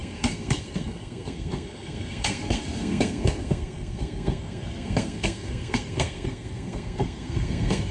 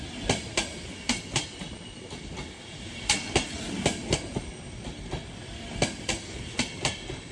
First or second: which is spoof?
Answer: first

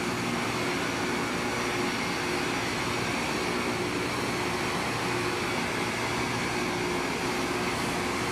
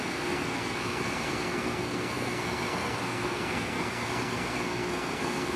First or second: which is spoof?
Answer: second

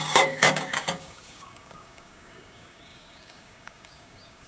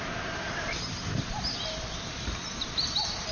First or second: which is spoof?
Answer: first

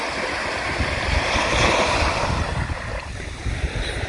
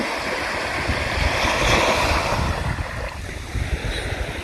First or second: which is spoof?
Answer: first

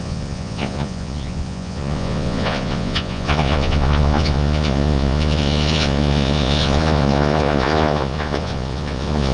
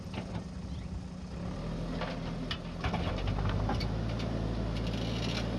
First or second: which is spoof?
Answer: first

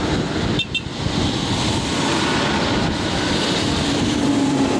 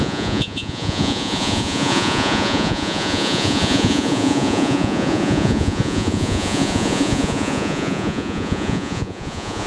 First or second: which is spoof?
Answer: second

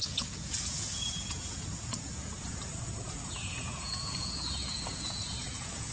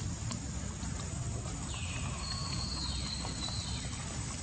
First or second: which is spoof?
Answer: first